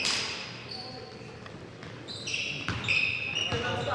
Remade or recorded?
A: recorded